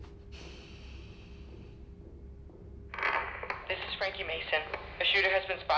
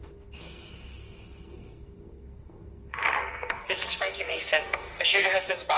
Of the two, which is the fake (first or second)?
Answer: second